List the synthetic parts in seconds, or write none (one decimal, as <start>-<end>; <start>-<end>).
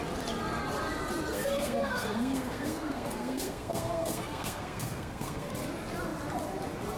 1.3-5.5